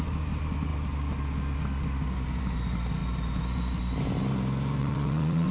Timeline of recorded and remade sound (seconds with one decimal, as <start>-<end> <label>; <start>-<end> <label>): 0.0-4.8 recorded; 4.8-5.5 remade